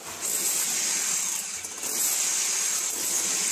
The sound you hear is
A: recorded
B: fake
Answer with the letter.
A